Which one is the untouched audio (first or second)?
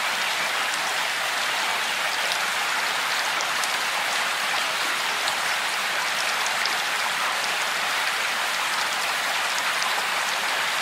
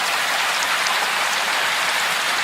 second